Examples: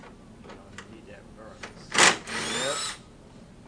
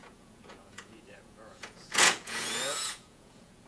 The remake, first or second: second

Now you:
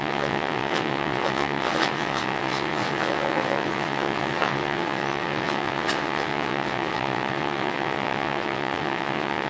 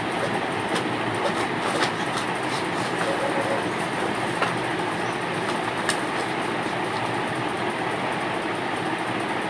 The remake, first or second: first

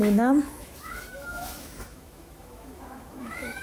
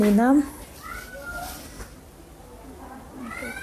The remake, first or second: first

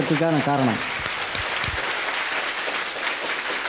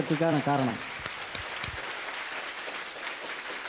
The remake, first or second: second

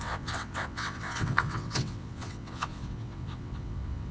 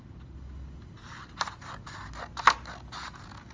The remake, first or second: first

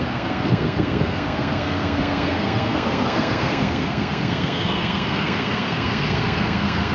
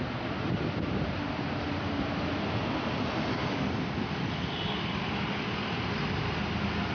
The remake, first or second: first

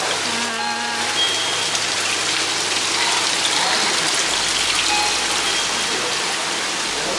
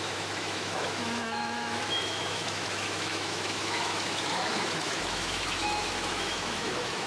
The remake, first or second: second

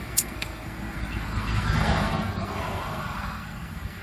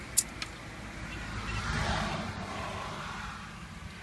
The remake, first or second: first